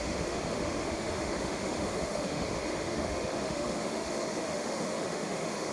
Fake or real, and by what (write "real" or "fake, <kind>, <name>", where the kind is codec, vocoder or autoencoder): fake, autoencoder, DAC-VAE